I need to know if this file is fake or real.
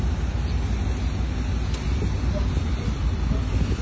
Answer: real